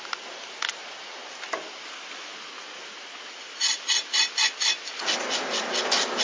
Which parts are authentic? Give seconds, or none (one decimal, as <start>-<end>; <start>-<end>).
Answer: 0.0-6.2